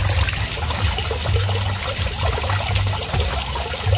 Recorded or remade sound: recorded